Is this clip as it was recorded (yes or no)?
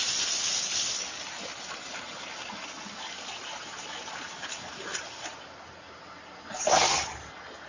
yes